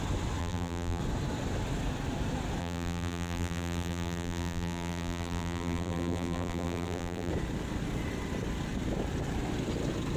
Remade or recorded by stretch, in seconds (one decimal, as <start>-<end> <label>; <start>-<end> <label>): 0.0-0.4 recorded; 0.4-1.0 remade; 1.0-2.6 recorded; 2.6-7.3 remade; 7.3-10.2 recorded